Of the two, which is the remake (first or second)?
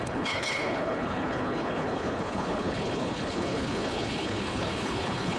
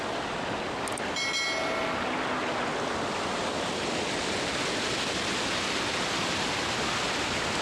first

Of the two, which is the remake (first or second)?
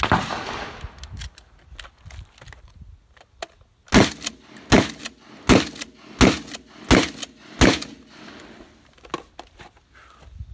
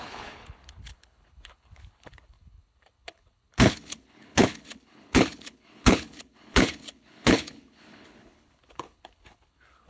second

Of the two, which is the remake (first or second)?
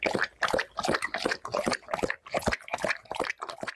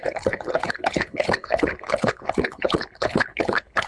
second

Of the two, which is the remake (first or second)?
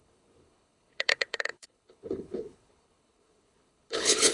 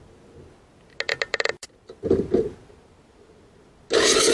first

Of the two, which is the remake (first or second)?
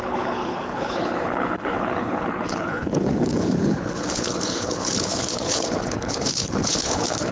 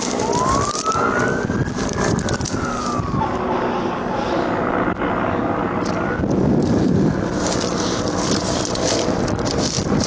first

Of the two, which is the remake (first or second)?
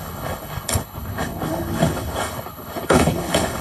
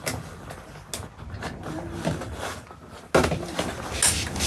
first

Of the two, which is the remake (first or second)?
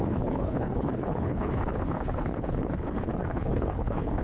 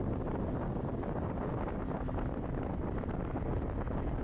first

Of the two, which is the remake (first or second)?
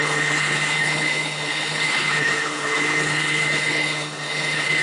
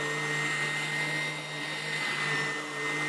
first